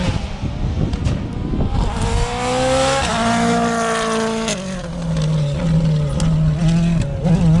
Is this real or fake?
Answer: real